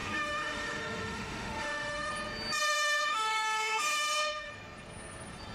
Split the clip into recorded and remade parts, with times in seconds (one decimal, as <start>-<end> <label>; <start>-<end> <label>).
0.0-2.1 remade; 2.1-2.6 recorded; 2.6-4.5 remade; 4.5-5.5 recorded